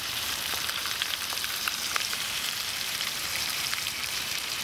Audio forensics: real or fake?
fake